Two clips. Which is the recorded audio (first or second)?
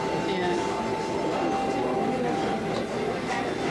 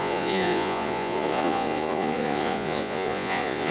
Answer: first